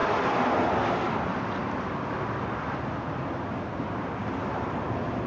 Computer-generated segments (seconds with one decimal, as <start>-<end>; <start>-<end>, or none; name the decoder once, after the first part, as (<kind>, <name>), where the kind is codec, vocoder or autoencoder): none